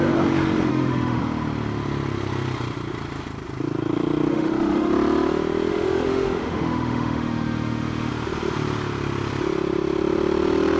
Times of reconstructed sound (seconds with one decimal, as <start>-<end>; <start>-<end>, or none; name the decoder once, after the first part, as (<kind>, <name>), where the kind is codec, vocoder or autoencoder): 0.7-1.2 (autoencoder, DAC-VAE); 4.3-4.9; 5.7-8.1